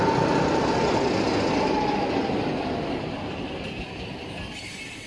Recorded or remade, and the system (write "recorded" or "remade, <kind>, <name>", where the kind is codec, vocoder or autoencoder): recorded